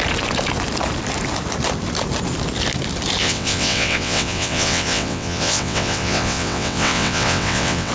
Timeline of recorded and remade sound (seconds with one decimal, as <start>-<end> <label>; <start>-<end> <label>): 0.0-3.2 recorded; 3.2-7.9 remade